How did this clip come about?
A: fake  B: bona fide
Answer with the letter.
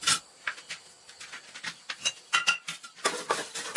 B